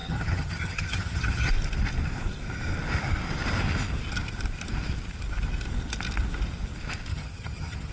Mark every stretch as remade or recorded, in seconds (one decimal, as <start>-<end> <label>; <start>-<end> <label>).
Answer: 0.0-1.5 remade; 1.5-7.1 recorded; 7.1-7.9 remade